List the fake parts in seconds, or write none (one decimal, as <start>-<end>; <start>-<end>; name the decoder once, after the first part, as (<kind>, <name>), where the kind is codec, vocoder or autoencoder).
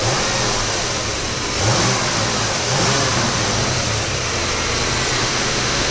5.2-5.9 (autoencoder, DAC-VAE)